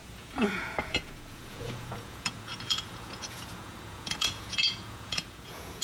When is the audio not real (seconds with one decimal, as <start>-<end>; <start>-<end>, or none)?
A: 0.0-5.8